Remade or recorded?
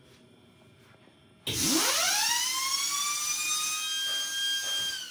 recorded